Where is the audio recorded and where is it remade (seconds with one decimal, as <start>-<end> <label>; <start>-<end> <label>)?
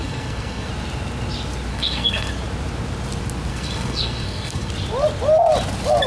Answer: 0.0-0.7 remade; 0.7-1.7 recorded; 1.7-2.3 remade; 2.3-3.5 recorded; 3.5-4.7 remade; 4.7-6.1 recorded